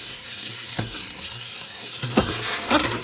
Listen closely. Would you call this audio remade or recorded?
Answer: remade